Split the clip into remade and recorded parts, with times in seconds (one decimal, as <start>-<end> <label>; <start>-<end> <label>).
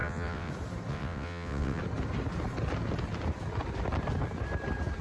0.0-0.5 remade; 0.5-0.9 recorded; 0.9-1.8 remade; 1.8-5.0 recorded